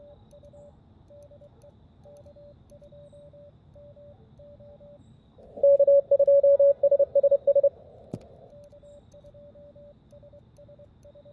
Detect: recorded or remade recorded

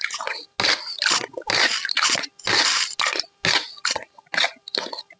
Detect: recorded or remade recorded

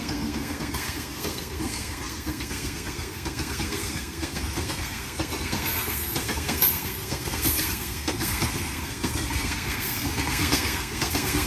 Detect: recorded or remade remade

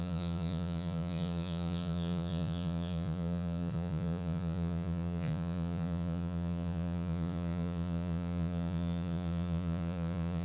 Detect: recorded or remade remade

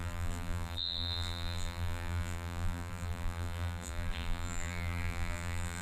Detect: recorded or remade remade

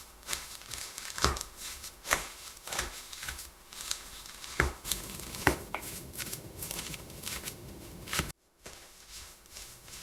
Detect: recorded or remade remade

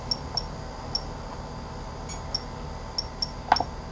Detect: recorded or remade recorded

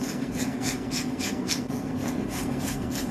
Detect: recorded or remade remade